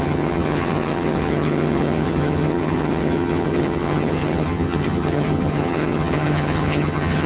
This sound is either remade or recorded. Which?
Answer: remade